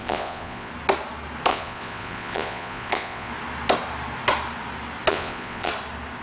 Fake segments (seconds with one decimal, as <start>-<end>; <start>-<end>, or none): 0.0-0.7; 1.5-3.3; 5.1-5.7